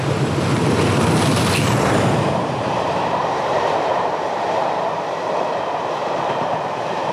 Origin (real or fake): fake